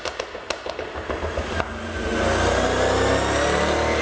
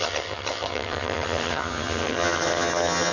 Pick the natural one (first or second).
first